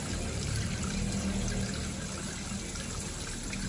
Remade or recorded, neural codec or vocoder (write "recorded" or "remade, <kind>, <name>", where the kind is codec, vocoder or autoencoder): recorded